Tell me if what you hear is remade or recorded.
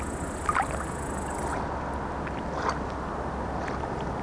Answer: recorded